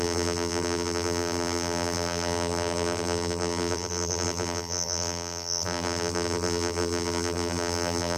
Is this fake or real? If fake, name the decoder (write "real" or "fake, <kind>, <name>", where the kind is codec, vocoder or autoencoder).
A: fake, vocoder, BigVGAN v2